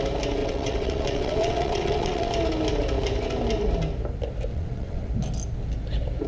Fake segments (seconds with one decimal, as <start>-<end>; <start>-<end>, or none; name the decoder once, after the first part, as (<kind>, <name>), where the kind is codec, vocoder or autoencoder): 0.4-2.3 (vocoder, WaveNeXt); 4.5-5.1